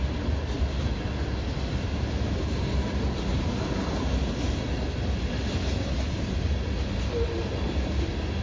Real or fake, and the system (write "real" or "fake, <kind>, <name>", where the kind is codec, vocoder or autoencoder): real